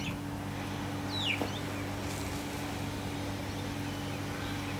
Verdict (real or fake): real